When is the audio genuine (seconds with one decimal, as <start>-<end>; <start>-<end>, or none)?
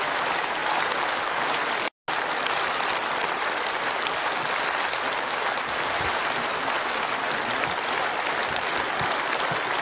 0.0-9.8